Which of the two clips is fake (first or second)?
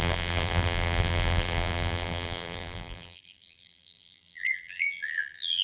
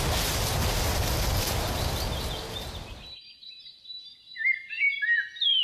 first